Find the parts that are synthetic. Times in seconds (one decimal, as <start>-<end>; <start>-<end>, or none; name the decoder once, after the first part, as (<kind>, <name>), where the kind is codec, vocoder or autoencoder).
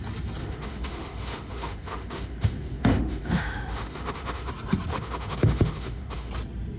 0.4-4.5 (autoencoder, DAC-VAE); 4.9-6.3